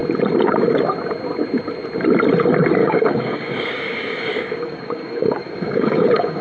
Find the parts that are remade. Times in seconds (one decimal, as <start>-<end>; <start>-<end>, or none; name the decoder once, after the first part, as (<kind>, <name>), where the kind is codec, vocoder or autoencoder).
2.8-6.4 (codec, DAC)